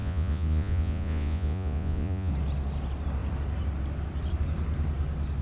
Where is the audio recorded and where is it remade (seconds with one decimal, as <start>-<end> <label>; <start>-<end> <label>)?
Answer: 0.0-2.3 remade; 2.3-5.4 recorded